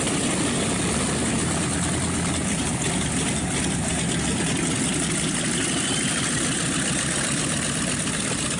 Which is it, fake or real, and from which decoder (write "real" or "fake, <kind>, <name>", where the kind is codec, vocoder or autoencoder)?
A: real